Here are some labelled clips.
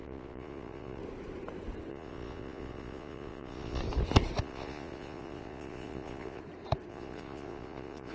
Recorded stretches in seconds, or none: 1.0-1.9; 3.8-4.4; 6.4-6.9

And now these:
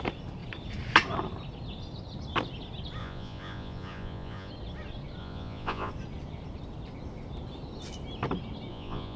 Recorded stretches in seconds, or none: 0.0-3.0; 4.5-5.2; 5.9-8.7

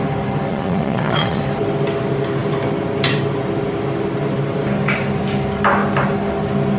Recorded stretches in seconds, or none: 0.0-0.5; 1.4-6.8